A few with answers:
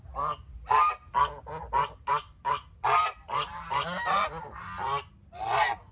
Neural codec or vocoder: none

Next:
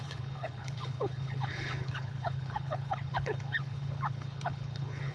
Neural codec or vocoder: codec, HILCodec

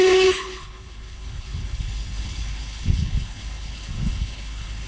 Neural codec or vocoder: codec, HILCodec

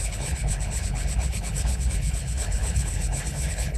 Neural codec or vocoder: codec, HILCodec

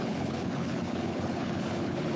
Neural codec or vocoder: codec, HILCodec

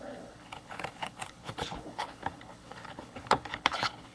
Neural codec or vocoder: codec, HILCodec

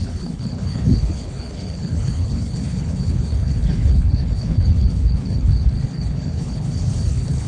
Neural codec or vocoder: codec, HILCodec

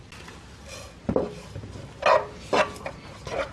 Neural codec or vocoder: none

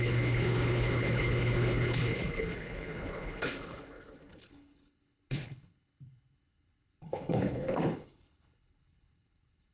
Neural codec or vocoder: codec, HILCodec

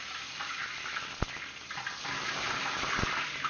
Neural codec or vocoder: none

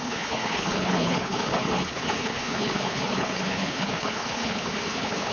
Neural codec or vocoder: codec, HILCodec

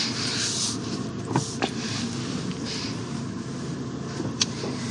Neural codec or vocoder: none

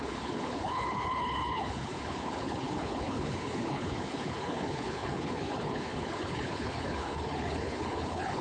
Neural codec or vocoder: codec, HILCodec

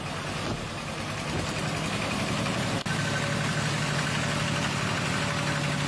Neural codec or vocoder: none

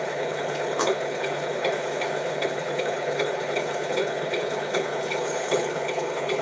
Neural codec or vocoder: codec, HILCodec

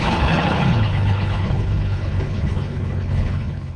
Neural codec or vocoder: codec, HILCodec